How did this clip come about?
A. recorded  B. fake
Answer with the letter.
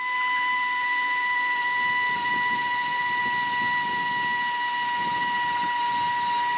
A